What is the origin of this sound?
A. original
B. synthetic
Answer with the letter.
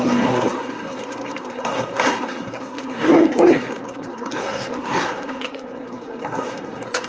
B